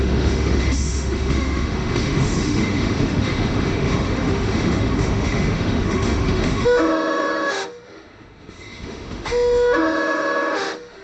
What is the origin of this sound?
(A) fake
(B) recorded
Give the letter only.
A